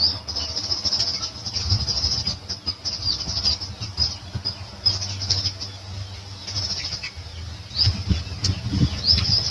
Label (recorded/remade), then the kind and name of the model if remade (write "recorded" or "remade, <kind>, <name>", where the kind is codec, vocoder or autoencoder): recorded